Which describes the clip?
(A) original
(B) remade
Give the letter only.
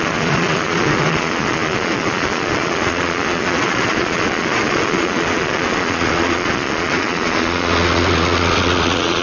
B